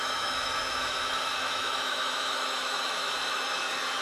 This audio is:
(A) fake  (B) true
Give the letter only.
A